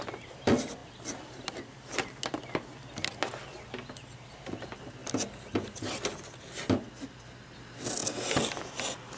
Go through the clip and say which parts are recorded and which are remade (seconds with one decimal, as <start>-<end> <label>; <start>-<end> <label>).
0.0-9.2 recorded